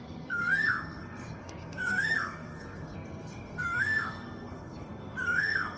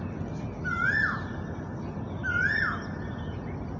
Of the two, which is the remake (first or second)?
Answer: first